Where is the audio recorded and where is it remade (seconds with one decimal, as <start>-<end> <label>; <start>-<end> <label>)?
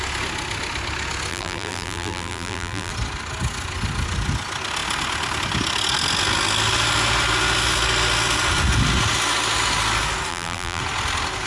0.0-1.3 recorded; 1.3-2.9 remade; 2.9-10.3 recorded; 10.3-10.8 remade; 10.8-11.5 recorded